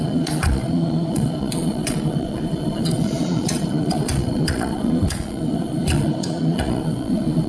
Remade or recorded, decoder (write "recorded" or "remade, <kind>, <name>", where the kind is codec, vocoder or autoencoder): remade, vocoder, Vocos